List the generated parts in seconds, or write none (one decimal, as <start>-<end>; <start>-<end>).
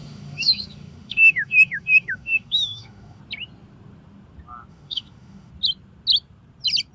0.0-3.2; 4.7-5.5